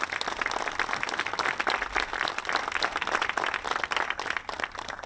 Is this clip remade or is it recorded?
recorded